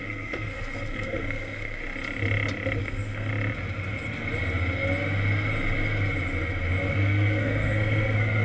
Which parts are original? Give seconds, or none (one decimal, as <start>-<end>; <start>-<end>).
1.8-2.8; 3.3-6.9